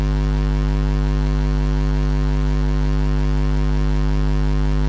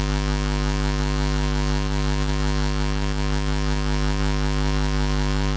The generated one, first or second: second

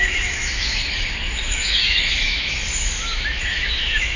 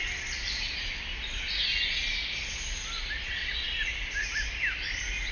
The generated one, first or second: first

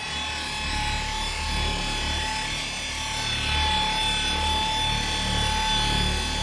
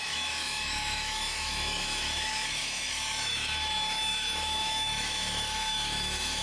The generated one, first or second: second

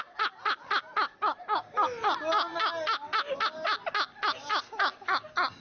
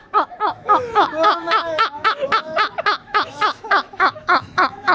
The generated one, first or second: second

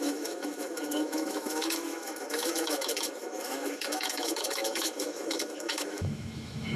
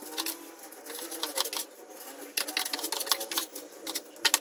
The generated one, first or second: first